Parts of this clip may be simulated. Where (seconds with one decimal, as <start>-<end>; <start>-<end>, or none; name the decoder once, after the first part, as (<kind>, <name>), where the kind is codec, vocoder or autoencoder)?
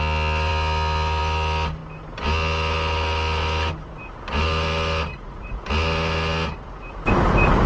5.1-5.7 (vocoder, Vocos)